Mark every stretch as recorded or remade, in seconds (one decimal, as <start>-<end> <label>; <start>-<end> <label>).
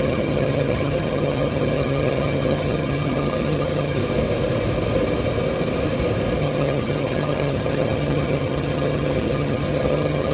0.0-4.0 remade; 4.0-6.4 recorded; 6.4-10.3 remade